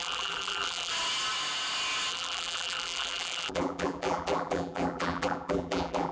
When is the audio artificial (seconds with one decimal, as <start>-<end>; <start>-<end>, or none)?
0.0-0.9; 2.1-6.1